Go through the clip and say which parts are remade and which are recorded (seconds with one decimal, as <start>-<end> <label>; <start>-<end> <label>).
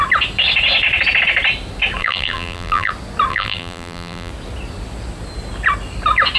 0.0-2.0 recorded; 2.0-2.9 remade; 2.9-3.3 recorded; 3.3-4.3 remade; 4.3-6.4 recorded